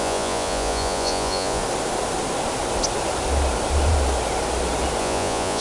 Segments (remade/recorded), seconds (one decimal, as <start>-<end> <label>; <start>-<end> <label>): 0.0-1.6 remade; 1.6-5.0 recorded; 5.0-5.6 remade